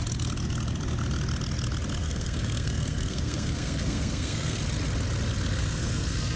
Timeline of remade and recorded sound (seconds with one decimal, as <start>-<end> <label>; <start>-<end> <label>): 0.0-2.0 recorded; 2.0-4.6 remade; 4.6-5.5 recorded; 5.5-6.4 remade